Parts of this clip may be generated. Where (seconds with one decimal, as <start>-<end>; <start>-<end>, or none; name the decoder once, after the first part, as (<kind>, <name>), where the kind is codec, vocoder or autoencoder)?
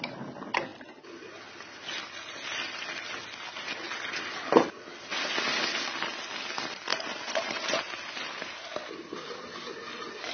none